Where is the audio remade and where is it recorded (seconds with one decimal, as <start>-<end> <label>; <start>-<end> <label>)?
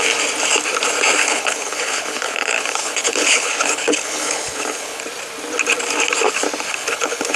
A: 0.0-1.2 recorded; 1.2-5.0 remade; 5.0-6.7 recorded; 6.7-7.4 remade